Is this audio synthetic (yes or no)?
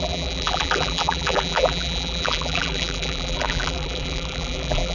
yes